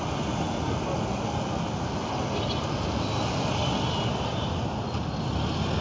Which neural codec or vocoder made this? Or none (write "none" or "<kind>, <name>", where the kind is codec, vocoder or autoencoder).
none